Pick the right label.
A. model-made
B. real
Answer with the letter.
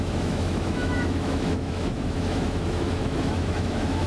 A